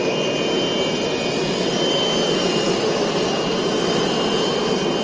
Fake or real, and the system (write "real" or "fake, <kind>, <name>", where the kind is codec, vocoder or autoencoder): real